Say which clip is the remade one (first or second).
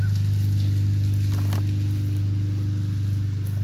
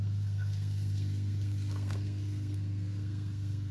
second